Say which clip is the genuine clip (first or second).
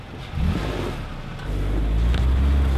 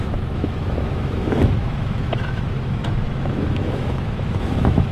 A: first